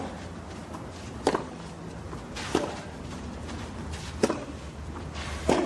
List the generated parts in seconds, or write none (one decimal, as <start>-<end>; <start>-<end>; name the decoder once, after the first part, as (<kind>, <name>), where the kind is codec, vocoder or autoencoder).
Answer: none